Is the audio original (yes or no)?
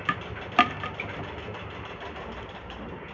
yes